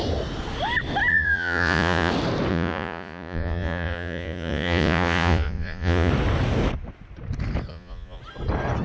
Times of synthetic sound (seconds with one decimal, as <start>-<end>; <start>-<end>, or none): 1.1-2.1; 2.5-6.1; 7.7-8.2